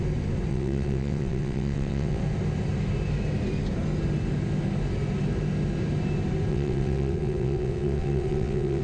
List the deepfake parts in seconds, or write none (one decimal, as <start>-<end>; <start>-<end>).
0.5-2.2; 6.5-8.8

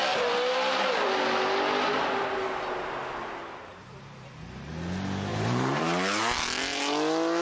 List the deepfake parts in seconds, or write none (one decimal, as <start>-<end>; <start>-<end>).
3.7-4.7; 5.3-5.8

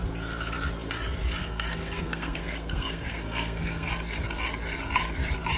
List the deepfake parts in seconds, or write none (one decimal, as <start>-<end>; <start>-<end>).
1.4-3.9